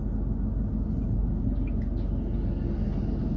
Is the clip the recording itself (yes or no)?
yes